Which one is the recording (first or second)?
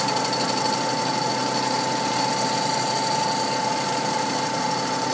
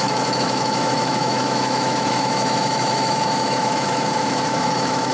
first